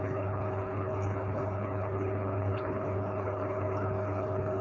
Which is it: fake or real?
fake